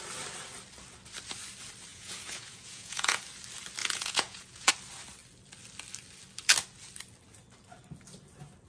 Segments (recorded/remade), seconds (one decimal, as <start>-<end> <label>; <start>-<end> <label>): 0.0-1.9 recorded; 1.9-3.2 remade; 3.2-3.8 recorded; 3.8-4.7 remade; 4.7-8.7 recorded